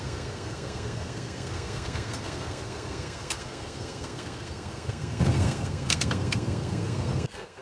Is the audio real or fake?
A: fake